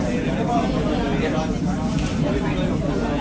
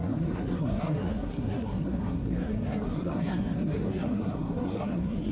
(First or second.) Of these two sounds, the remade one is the second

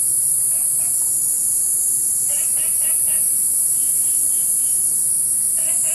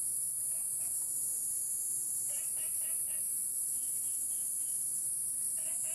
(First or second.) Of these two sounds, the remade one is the first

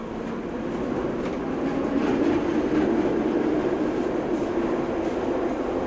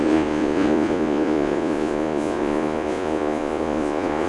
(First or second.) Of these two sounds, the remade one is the second